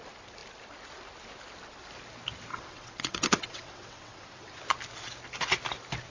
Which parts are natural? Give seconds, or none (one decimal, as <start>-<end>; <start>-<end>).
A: 0.0-2.5; 4.6-6.1